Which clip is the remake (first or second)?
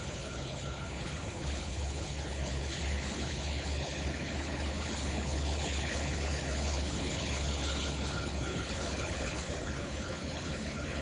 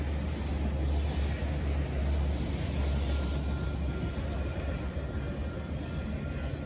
first